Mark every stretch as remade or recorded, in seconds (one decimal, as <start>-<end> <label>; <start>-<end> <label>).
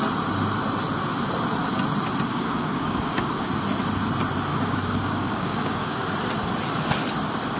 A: 0.0-2.3 recorded; 2.3-3.5 remade; 3.5-4.5 recorded; 4.5-6.0 remade; 6.0-7.6 recorded